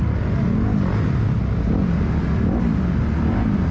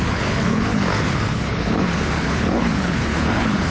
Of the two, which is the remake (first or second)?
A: second